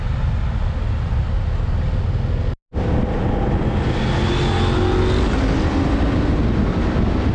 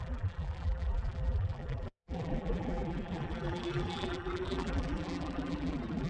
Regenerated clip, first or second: second